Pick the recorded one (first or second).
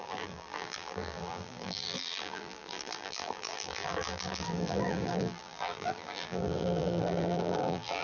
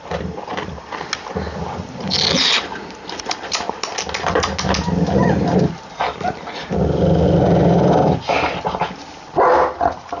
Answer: second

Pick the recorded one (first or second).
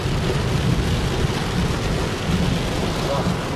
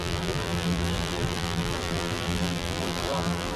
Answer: first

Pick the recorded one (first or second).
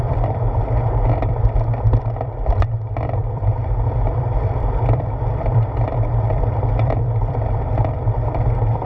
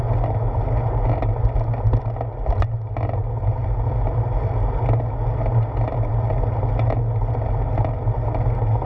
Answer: second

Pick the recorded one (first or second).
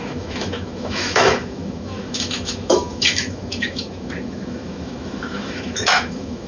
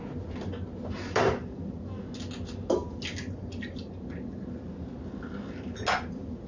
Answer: second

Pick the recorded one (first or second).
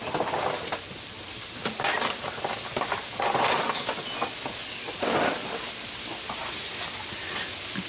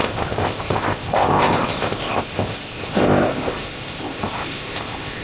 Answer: first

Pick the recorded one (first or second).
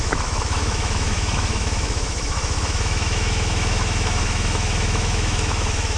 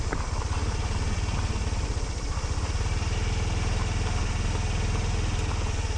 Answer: second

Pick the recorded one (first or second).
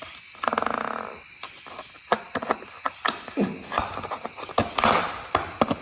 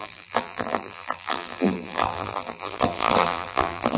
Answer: first